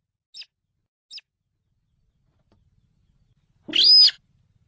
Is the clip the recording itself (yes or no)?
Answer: yes